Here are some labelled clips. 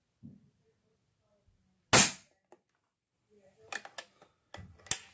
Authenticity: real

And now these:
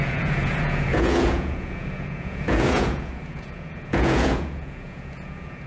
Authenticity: fake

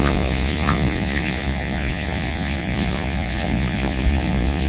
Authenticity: fake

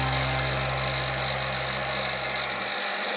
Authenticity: real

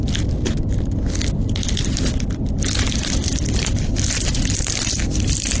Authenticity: real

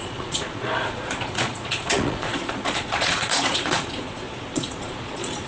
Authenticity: fake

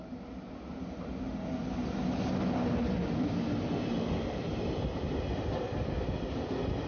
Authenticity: real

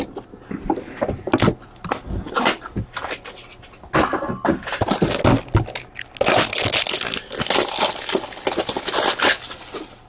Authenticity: real